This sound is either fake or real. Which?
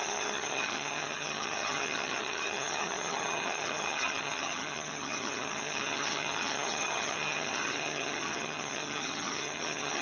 fake